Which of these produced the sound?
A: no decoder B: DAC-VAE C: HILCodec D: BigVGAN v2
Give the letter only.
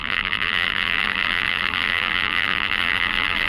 D